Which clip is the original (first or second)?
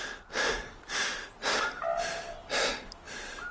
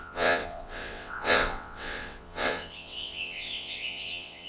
first